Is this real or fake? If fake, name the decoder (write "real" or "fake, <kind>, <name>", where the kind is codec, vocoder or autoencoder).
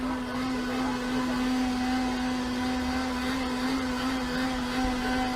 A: real